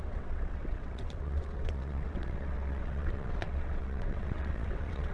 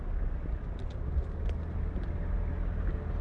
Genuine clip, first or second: second